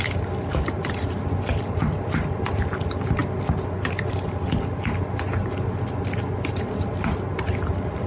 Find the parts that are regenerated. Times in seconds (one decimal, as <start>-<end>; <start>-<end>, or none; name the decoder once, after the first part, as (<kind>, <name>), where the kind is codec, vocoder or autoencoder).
none

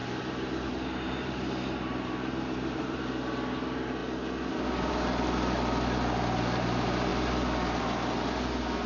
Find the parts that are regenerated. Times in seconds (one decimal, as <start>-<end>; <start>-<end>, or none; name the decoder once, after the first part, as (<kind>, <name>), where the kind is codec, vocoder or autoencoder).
0.0-3.0 (vocoder, BigVGAN v2)

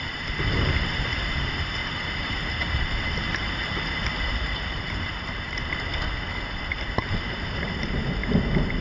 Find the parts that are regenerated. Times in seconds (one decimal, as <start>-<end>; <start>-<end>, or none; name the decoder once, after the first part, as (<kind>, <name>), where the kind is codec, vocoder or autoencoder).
0.0-1.8 (vocoder, BigVGAN v2); 2.3-5.9; 6.9-8.8

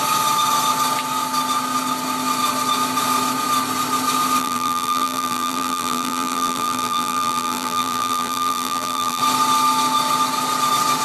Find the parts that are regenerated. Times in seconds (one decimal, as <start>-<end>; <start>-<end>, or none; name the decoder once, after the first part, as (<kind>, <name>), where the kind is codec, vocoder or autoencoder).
4.4-9.2 (vocoder, BigVGAN v2)

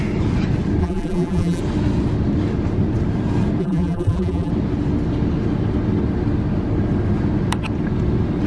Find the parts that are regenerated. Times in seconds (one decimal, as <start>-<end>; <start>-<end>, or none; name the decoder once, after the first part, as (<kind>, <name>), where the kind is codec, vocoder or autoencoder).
0.8-1.6 (vocoder, BigVGAN v2); 3.6-4.5

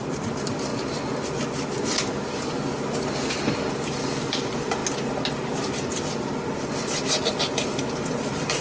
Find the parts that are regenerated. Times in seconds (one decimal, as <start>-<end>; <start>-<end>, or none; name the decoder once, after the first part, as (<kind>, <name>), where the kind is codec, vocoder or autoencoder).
0.0-0.7 (vocoder, BigVGAN v2); 3.7-4.8; 7.9-8.6

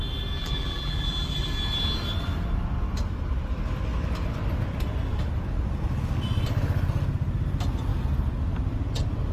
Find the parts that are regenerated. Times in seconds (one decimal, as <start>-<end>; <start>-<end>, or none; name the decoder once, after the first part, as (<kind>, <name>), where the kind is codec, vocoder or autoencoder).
0.4-1.5 (vocoder, BigVGAN v2)

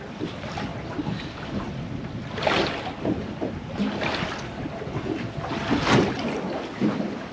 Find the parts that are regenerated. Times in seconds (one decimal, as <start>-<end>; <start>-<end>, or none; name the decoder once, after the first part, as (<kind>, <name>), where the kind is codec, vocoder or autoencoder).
none